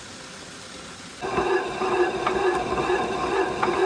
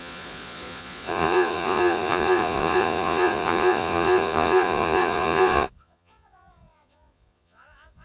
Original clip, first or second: first